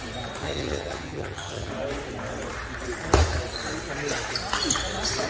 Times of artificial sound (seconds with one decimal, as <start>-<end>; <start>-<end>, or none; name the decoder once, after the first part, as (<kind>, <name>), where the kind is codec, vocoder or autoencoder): 0.4-1.7 (vocoder, HiFi-GAN)